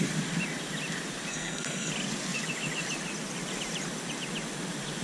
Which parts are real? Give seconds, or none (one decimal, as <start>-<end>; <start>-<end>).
0.0-1.3; 1.9-5.0